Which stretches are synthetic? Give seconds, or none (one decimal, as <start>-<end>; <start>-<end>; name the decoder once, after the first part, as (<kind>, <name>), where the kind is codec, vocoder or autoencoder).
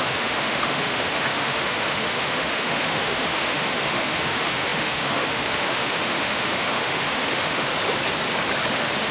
0.0-7.7 (autoencoder, DAC-VAE); 8.7-9.1